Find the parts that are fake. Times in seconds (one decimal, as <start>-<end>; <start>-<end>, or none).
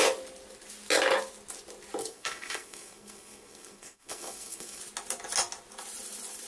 2.0-4.8